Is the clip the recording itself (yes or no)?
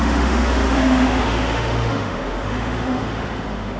no